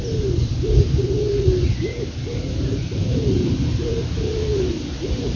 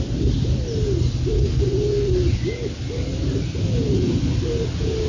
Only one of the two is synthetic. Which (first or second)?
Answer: first